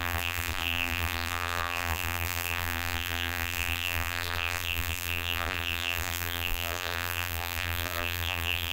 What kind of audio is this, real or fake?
fake